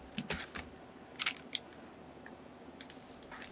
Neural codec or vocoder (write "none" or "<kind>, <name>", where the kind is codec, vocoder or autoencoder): none